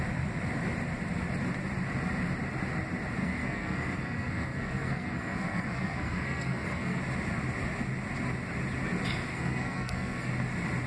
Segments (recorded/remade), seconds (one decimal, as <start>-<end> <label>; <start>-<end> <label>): 0.0-3.2 recorded; 3.2-7.0 remade; 7.0-9.3 recorded; 9.3-10.3 remade; 10.3-10.9 recorded